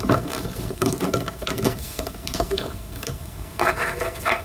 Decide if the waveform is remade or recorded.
remade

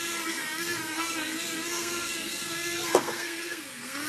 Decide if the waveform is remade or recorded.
remade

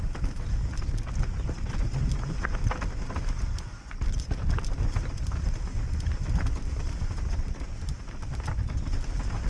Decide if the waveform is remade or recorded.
recorded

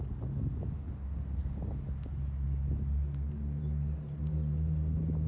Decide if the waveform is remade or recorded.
recorded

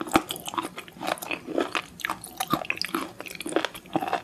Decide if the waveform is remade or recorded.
recorded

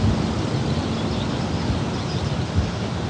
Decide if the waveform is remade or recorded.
recorded